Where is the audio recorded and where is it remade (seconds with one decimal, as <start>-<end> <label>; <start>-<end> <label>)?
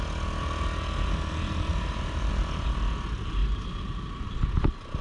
0.0-1.7 recorded; 1.7-2.3 remade; 2.3-3.4 recorded; 3.4-4.3 remade; 4.3-5.0 recorded